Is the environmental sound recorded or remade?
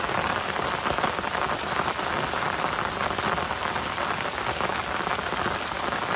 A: recorded